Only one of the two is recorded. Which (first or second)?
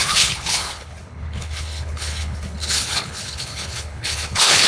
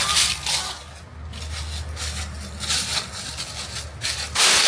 second